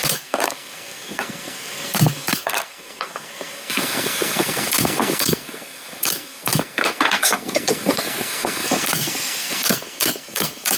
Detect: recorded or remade remade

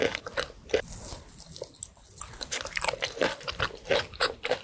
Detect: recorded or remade recorded